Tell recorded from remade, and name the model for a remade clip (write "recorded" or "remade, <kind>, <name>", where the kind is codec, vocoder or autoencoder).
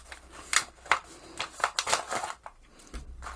recorded